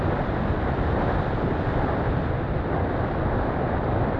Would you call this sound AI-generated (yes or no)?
no